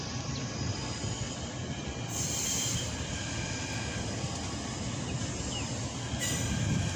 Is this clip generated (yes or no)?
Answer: no